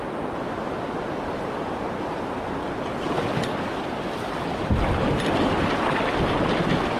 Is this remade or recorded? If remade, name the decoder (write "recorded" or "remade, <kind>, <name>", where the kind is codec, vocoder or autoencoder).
recorded